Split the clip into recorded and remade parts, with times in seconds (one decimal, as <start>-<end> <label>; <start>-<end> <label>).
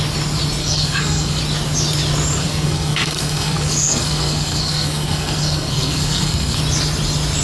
0.0-0.6 recorded; 0.6-1.4 remade; 1.4-2.4 recorded; 2.4-6.6 remade; 6.6-7.4 recorded